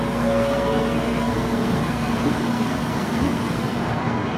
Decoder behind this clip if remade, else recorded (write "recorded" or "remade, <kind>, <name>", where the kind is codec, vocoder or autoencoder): remade, codec, SNAC